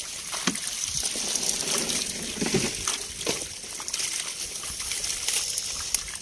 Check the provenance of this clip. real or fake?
real